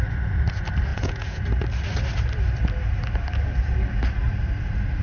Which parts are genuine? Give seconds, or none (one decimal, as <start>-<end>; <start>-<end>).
0.0-0.9; 1.4-5.0